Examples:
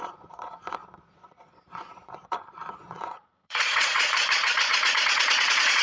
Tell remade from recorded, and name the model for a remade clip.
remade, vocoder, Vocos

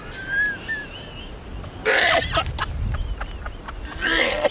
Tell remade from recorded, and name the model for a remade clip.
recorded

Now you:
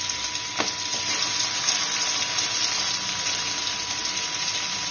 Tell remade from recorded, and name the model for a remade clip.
recorded